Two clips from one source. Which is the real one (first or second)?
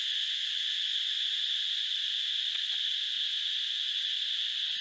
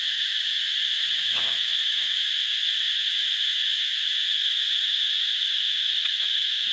first